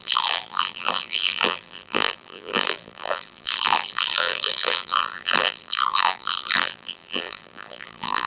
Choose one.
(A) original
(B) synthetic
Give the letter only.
B